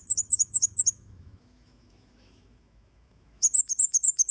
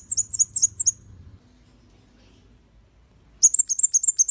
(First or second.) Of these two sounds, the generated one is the first